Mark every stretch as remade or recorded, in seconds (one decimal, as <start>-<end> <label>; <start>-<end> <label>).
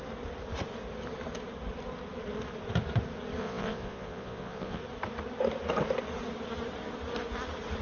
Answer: 0.0-3.4 recorded; 3.4-4.8 remade; 4.8-7.8 recorded